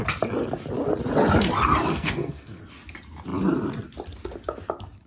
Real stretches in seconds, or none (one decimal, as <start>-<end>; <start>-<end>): 0.0-1.9; 2.6-5.1